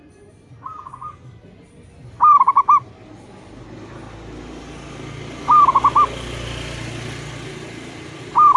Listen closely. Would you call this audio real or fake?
real